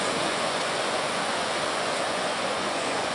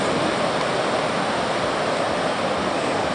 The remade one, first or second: first